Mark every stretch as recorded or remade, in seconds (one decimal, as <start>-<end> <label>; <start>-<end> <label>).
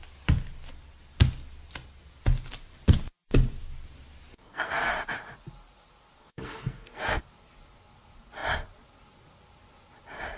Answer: 0.0-4.3 recorded; 4.3-4.9 remade; 4.9-6.2 recorded; 6.2-7.2 remade; 7.2-10.4 recorded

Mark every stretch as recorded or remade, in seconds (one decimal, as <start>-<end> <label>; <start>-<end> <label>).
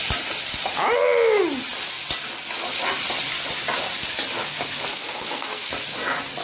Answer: 0.0-4.9 recorded; 4.9-5.7 remade; 5.7-6.4 recorded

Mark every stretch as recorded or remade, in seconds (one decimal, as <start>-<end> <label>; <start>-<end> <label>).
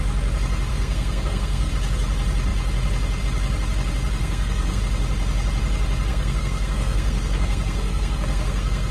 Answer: 0.0-0.7 recorded; 0.7-1.7 remade; 1.7-4.2 recorded; 4.2-4.8 remade; 4.8-6.1 recorded; 6.1-8.9 remade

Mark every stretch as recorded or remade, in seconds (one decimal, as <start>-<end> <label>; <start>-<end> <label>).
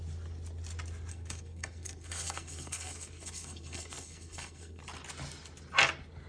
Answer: 0.0-1.1 recorded; 1.1-4.8 remade; 4.8-6.3 recorded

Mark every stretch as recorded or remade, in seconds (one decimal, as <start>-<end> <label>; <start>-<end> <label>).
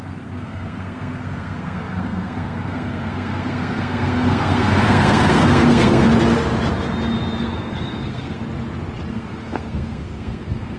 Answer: 0.0-6.1 remade; 6.1-7.4 recorded; 7.4-8.4 remade; 8.4-9.1 recorded; 9.1-10.8 remade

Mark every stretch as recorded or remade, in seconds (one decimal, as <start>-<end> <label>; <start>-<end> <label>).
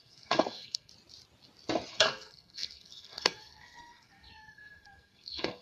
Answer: 0.0-0.9 remade; 0.9-1.9 recorded; 1.9-5.6 remade